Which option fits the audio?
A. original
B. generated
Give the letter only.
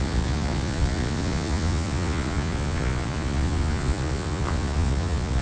B